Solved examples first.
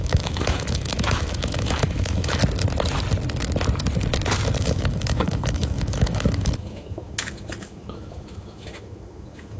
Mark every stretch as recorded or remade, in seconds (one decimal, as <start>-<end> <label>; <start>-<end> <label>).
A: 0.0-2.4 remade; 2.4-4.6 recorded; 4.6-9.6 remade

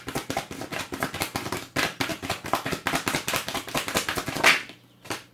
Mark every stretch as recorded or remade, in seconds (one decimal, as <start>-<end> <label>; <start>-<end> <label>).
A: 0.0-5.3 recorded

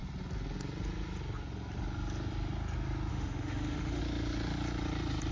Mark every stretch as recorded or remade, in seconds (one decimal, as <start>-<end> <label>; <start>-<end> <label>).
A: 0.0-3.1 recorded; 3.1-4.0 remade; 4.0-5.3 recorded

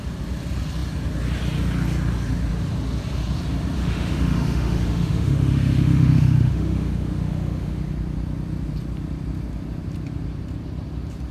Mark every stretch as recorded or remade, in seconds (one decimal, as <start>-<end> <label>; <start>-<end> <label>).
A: 0.0-3.8 recorded; 3.8-7.8 remade; 7.8-11.3 recorded